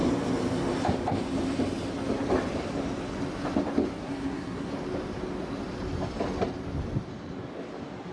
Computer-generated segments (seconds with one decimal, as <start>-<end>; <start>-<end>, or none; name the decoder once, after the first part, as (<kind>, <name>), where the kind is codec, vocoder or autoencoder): 4.0-4.7 (codec, SNAC)